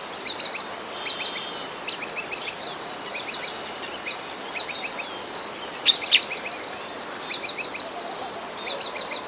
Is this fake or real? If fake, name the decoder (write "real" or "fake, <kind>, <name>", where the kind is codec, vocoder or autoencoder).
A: real